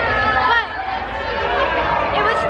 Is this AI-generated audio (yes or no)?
no